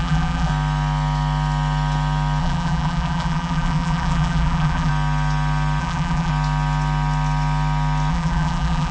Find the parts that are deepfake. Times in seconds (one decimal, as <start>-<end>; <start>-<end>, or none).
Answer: 0.0-0.5; 2.4-4.9; 5.8-6.3; 8.1-8.9

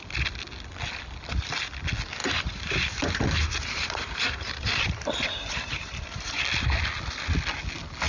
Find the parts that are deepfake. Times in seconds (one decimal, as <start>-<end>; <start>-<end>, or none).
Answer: 2.2-6.4